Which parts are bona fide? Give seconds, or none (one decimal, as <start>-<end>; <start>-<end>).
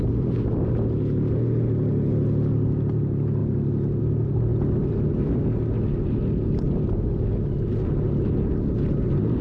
0.0-9.4